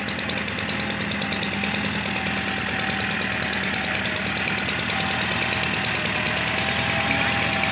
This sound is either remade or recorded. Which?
recorded